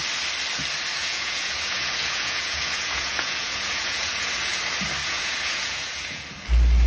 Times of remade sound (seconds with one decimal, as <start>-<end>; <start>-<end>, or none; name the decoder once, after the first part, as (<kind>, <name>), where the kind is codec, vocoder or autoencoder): 1.0-4.6 (vocoder, Vocos); 5.0-6.2